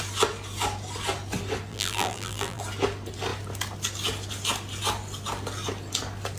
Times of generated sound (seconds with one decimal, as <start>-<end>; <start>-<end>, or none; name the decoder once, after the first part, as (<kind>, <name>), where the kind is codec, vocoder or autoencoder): 1.7-2.6 (vocoder, BigVGAN v2)